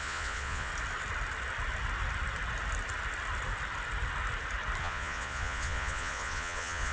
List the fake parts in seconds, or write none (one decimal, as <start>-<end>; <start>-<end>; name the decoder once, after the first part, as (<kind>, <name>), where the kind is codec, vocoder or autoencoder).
0.0-0.7 (vocoder, Vocos); 4.8-6.9